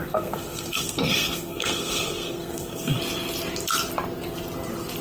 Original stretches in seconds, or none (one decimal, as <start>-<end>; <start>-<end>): 3.0-5.0

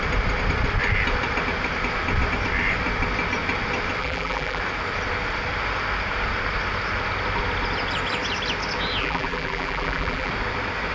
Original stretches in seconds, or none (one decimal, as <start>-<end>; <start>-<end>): 0.0-4.0; 4.6-9.0; 10.3-10.9

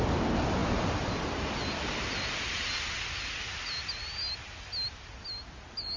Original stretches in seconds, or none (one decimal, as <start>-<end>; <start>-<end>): 0.0-6.0

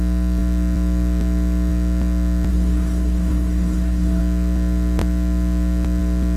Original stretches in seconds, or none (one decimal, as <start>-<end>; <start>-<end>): 0.0-2.5; 4.2-6.4

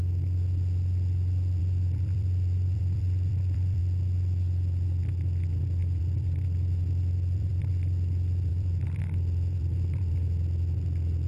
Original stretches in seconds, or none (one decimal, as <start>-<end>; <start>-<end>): 0.0-1.6; 3.8-5.8; 7.7-8.5; 10.1-11.3

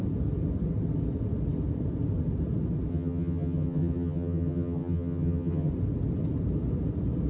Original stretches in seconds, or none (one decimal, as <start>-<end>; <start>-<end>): 0.0-2.9; 5.7-7.3

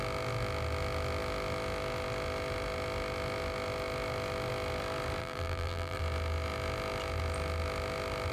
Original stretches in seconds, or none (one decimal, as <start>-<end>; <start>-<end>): 0.0-5.2; 6.0-8.3